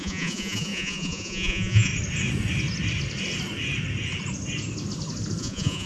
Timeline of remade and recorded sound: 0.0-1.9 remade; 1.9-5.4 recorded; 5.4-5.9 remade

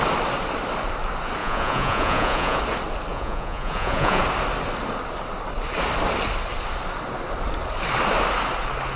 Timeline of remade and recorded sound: 0.0-1.4 recorded; 1.4-2.6 remade; 2.6-3.1 recorded; 3.1-4.2 remade; 4.2-9.0 recorded